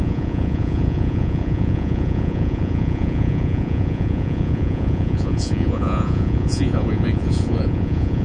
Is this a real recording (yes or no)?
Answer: no